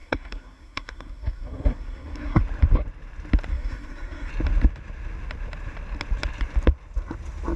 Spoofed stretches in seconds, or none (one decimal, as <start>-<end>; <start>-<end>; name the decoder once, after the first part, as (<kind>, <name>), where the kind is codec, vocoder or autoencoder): 0.0-2.4 (codec, SNAC); 3.5-4.3